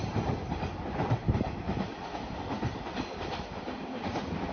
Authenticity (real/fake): real